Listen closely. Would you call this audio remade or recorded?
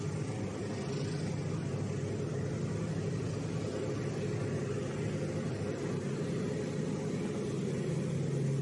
recorded